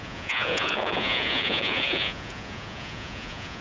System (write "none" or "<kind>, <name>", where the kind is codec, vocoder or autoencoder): vocoder, Vocos